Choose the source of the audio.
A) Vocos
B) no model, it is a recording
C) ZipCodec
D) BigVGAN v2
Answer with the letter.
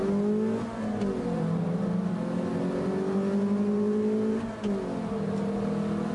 B